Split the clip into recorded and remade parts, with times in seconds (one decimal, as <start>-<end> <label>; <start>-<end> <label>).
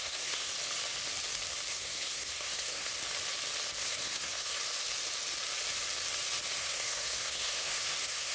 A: 0.0-0.5 remade; 0.5-1.7 recorded; 1.7-2.9 remade; 2.9-3.8 recorded; 3.8-4.6 remade; 4.6-6.6 recorded; 6.6-8.3 remade